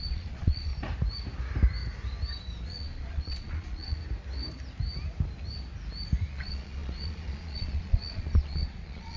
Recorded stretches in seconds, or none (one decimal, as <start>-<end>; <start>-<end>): 0.7-2.6; 4.0-6.3